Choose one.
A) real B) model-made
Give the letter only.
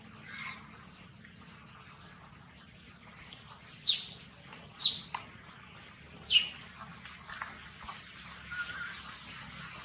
A